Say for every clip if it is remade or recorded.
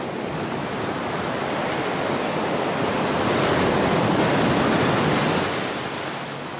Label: recorded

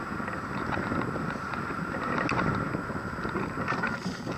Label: recorded